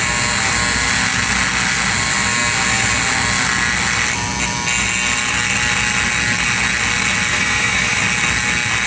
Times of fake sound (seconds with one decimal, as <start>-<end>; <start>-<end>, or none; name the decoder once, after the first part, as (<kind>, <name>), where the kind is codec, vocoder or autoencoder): 7.3-8.0 (autoencoder, DAC-VAE)